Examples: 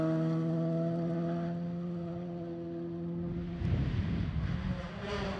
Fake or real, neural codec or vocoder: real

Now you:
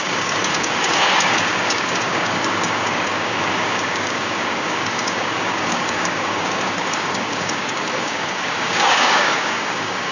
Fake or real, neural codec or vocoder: fake, codec, DAC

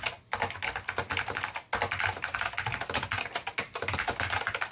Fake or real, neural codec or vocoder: real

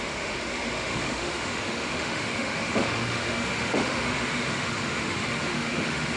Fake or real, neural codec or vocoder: fake, autoencoder, DAC-VAE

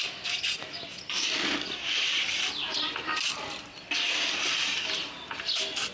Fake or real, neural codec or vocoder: real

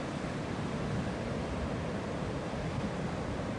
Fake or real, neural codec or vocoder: real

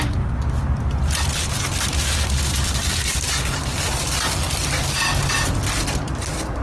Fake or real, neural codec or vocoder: real